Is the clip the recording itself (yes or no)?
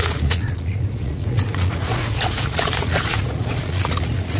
no